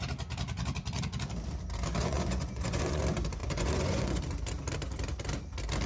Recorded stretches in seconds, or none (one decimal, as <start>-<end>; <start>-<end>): 0.0-2.0; 3.0-3.4; 4.2-5.9